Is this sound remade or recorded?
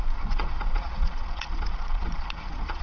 remade